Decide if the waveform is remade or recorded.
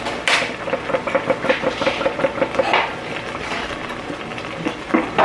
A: recorded